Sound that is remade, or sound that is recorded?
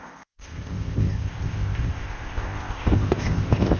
remade